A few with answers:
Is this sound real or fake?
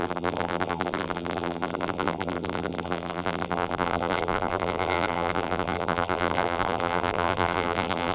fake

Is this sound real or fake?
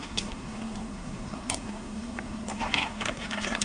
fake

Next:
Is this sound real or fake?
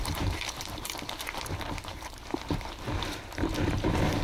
fake